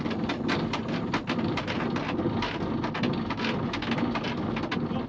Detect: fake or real real